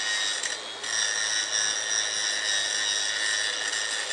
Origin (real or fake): real